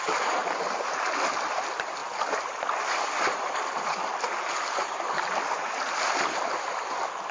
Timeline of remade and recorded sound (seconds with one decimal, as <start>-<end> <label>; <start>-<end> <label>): 0.0-0.4 remade; 0.4-1.1 recorded; 1.1-7.3 remade